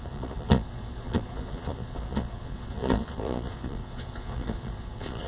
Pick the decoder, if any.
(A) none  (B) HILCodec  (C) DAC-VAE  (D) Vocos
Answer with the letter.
D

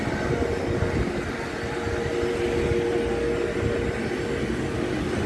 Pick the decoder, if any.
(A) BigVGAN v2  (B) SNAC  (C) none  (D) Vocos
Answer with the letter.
C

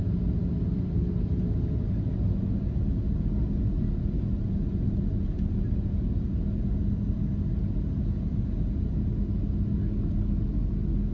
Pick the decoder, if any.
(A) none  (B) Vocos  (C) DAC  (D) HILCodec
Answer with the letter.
A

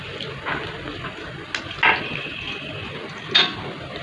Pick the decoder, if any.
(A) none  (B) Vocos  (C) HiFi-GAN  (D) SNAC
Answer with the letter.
A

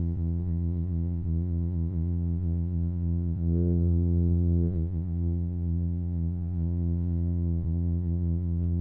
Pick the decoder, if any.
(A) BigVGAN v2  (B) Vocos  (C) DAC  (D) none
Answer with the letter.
B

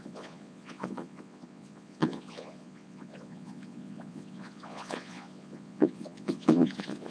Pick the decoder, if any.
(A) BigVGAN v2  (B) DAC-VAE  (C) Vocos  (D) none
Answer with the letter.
C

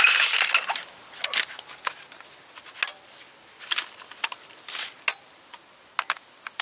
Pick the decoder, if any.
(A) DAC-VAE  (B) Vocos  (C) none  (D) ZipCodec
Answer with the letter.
C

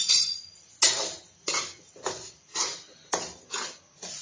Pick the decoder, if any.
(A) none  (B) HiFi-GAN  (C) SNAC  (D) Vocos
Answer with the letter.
A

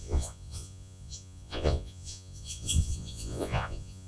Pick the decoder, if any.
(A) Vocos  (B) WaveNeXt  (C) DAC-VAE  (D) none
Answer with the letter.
A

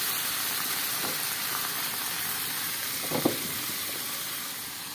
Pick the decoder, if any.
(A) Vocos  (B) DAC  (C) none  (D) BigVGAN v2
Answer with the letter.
C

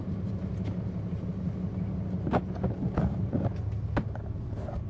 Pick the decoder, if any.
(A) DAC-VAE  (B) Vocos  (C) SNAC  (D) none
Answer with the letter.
D